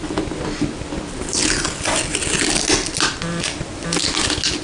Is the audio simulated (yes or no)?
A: no